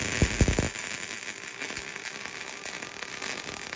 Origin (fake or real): real